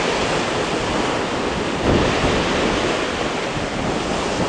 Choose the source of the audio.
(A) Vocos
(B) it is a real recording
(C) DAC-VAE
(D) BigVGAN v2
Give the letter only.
B